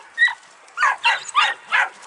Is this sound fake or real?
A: fake